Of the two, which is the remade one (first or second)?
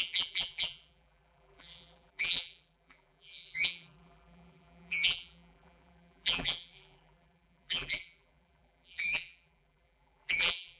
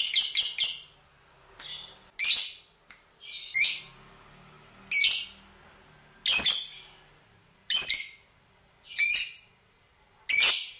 first